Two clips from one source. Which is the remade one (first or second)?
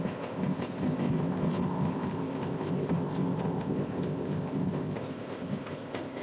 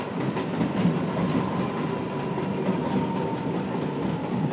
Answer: first